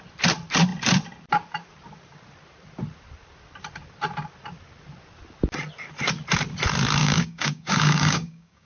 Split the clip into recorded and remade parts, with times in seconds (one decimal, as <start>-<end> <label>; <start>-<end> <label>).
0.0-7.0 recorded; 7.0-8.7 remade